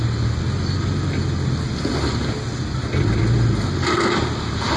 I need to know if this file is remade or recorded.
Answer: recorded